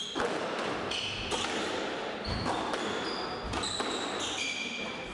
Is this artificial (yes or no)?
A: no